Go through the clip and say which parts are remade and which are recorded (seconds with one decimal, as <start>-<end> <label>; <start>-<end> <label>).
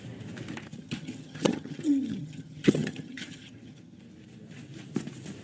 0.0-0.8 recorded; 0.8-4.0 remade; 4.0-5.4 recorded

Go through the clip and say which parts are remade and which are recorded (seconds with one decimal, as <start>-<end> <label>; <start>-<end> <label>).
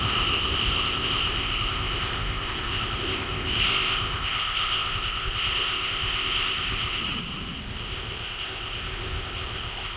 0.0-7.0 remade; 7.0-7.6 recorded; 7.6-10.0 remade